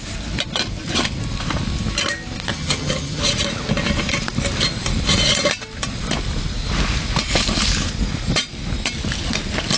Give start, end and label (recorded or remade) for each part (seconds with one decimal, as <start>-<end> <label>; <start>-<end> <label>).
0.0-2.5 recorded; 2.5-3.2 remade; 3.2-9.8 recorded